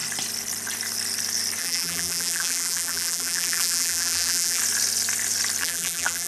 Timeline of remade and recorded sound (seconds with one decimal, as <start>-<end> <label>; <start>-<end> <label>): 0.0-1.6 recorded; 1.6-4.6 remade; 4.6-5.6 recorded; 5.6-6.3 remade